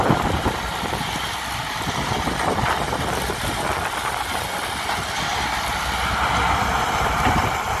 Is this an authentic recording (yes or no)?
yes